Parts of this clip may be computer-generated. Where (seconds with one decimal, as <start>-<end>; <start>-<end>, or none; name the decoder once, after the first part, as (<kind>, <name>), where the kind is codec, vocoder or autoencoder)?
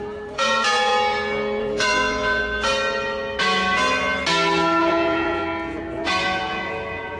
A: 0.0-0.9 (vocoder, Vocos); 1.6-2.4; 4.8-5.4; 6.2-7.2